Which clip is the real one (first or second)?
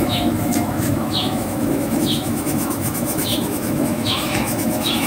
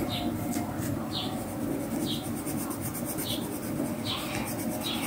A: second